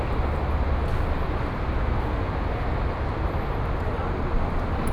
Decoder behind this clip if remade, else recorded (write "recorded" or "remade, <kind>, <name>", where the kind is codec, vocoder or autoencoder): recorded